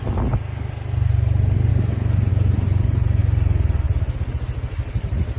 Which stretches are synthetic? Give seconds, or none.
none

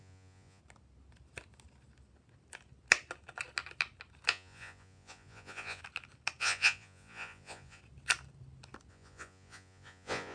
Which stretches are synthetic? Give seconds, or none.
0.0-0.6 (vocoder, Vocos); 4.3-5.8; 6.4-7.8; 8.9-10.3

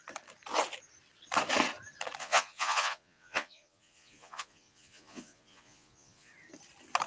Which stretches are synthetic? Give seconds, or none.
2.2-6.3 (vocoder, Vocos)

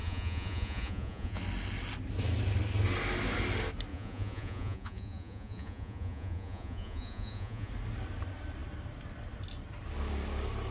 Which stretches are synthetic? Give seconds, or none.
0.0-1.4 (vocoder, Vocos); 3.9-7.7